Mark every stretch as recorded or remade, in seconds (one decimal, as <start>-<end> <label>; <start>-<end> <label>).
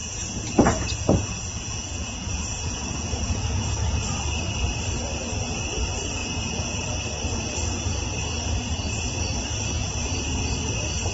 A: 0.0-3.7 remade; 3.7-6.2 recorded; 6.2-6.9 remade; 6.9-11.1 recorded